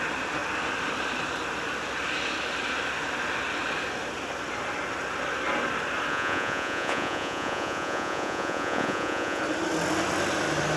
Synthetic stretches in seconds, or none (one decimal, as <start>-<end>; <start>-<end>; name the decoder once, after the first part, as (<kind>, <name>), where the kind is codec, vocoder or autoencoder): 6.1-9.4 (vocoder, Vocos)